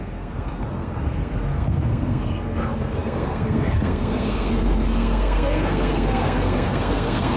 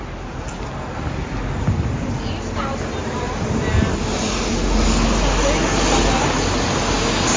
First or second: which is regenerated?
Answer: first